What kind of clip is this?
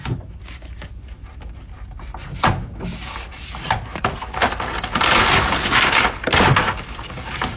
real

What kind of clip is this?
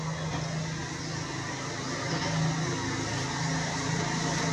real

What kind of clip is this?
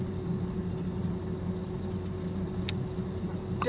real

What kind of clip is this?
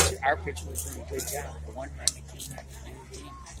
real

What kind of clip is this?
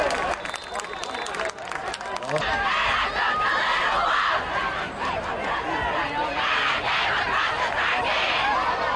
real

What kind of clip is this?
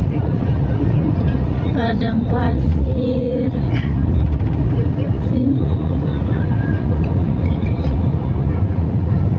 fake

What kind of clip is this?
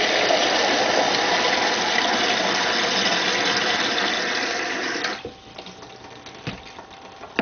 real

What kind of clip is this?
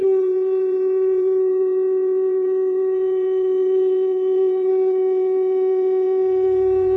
fake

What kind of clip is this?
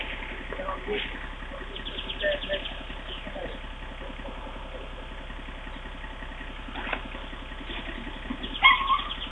real